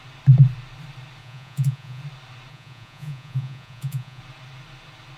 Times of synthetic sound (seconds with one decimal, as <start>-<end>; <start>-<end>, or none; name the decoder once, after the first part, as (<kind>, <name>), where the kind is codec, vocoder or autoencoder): 1.2-2.0 (vocoder, Vocos); 2.5-4.2